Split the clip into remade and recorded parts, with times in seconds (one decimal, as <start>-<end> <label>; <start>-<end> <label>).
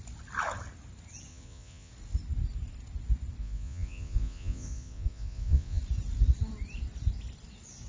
0.0-1.3 recorded; 1.3-1.9 remade; 1.9-3.4 recorded; 3.4-5.8 remade; 5.8-7.9 recorded